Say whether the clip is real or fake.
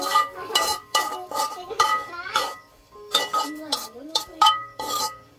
fake